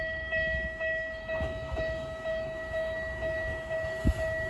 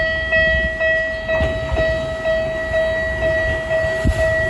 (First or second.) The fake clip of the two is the first